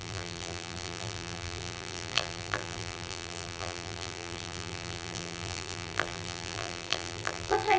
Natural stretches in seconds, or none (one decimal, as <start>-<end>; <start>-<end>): none